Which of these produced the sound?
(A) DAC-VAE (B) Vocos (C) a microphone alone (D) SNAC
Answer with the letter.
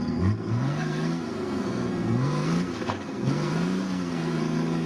D